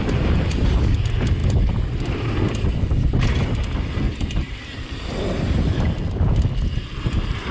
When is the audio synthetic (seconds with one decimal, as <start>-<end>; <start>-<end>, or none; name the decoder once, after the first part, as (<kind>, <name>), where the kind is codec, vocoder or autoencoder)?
none